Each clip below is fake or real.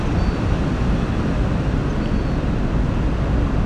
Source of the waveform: real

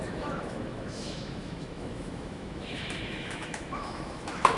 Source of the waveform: fake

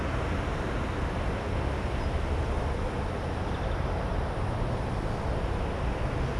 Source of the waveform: real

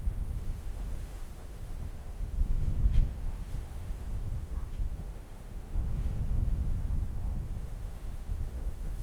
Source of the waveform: fake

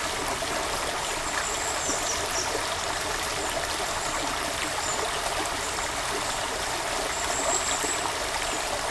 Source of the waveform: real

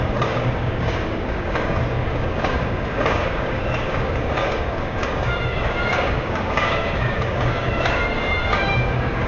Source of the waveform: fake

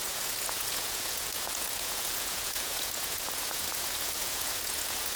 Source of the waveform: fake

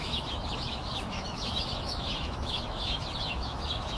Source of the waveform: fake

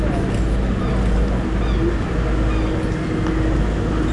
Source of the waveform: real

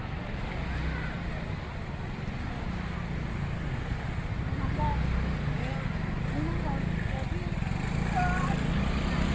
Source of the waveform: real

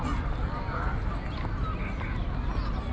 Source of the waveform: real